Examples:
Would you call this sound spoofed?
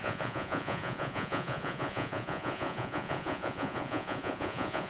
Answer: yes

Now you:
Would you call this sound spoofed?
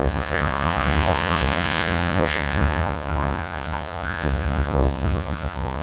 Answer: yes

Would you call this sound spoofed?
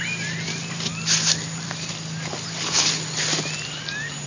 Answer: no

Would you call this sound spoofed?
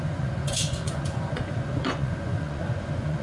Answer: yes